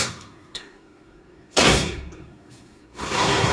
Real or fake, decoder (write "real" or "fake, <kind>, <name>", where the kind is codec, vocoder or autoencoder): fake, codec, SNAC